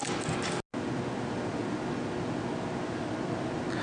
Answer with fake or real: real